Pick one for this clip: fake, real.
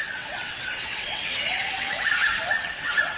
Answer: fake